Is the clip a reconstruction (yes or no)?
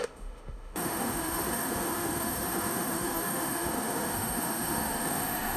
yes